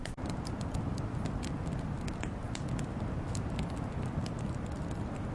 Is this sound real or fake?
real